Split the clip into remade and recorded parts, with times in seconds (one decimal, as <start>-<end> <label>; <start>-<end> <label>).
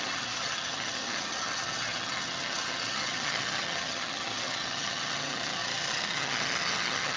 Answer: 0.0-7.2 remade